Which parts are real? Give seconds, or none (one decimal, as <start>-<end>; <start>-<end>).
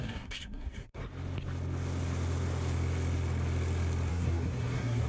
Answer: 1.0-4.1